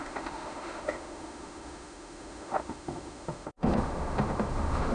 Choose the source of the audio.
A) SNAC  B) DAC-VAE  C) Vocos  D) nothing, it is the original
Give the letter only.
B